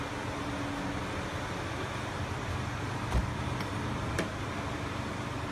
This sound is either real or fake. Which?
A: real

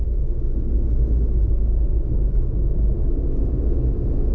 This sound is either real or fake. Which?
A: real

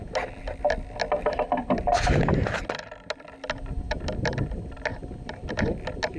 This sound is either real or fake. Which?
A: real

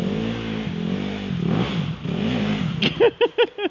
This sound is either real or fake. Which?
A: real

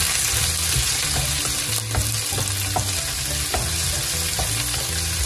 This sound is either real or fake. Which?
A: real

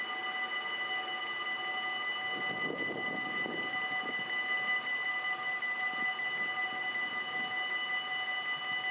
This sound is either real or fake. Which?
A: real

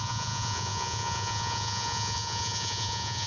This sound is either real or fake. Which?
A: fake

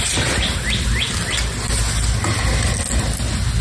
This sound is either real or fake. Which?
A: real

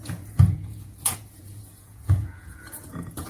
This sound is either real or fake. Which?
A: fake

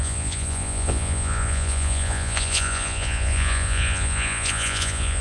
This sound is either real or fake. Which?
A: fake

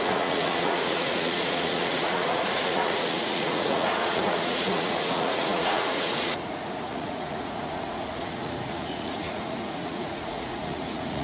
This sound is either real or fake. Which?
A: fake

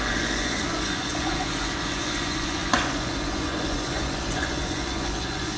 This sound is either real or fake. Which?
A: fake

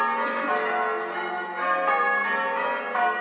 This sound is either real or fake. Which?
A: real